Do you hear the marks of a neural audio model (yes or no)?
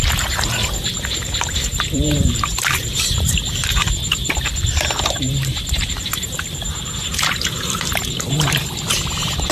yes